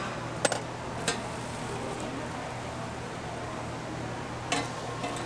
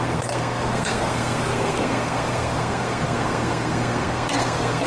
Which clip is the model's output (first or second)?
second